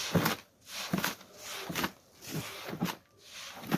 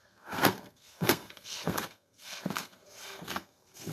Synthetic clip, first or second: second